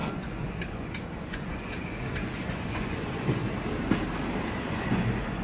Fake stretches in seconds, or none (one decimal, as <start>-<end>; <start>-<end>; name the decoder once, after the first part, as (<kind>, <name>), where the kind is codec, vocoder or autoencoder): 0.0-3.4 (vocoder, Vocos); 4.7-5.4